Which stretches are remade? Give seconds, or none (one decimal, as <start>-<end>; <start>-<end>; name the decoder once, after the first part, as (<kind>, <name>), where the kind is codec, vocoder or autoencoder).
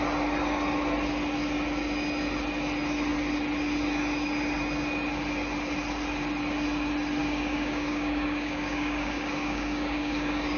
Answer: 7.2-10.6 (codec, DAC)